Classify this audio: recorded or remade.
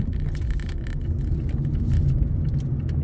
recorded